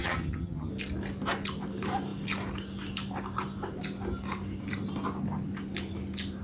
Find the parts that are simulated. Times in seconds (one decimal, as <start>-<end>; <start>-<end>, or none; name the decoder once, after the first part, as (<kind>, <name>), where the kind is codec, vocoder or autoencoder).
0.0-0.7 (vocoder, HiFi-GAN)